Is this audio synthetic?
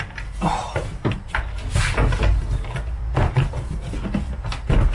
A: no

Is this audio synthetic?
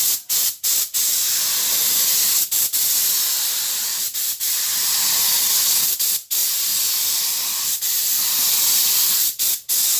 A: no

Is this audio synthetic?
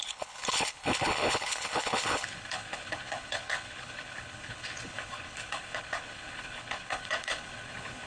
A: yes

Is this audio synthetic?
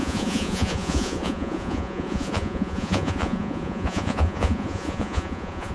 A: yes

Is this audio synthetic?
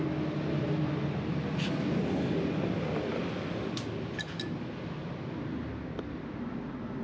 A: no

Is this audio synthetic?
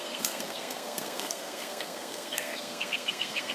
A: yes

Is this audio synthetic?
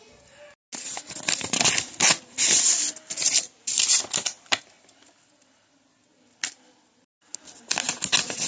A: no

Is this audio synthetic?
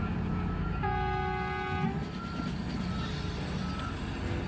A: no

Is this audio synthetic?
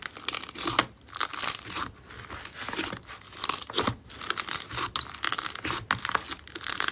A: no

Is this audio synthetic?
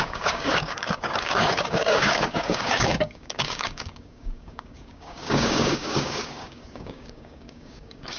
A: yes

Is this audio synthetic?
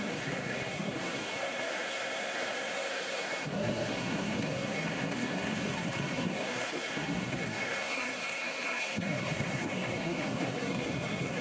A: yes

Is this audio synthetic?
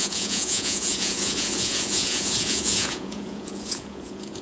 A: yes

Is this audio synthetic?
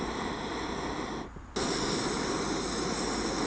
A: no